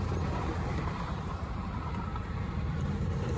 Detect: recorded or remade remade